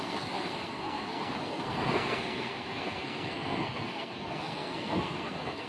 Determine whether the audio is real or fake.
fake